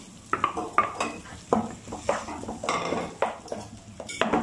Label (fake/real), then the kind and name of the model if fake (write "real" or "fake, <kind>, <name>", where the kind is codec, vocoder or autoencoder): real